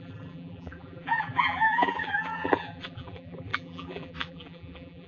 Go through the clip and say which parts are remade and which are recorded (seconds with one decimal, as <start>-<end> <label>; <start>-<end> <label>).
0.0-5.1 remade